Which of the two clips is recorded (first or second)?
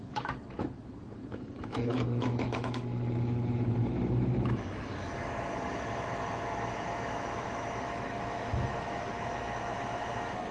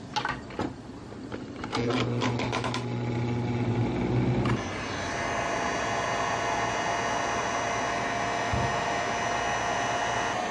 second